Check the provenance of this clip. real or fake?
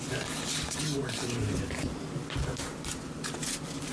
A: real